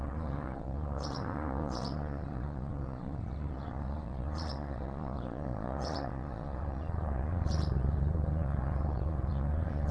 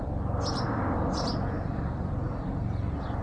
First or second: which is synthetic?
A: first